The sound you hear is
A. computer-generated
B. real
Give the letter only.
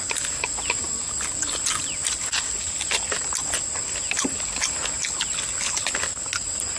B